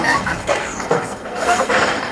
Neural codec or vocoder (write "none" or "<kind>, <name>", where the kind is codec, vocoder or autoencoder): codec, SNAC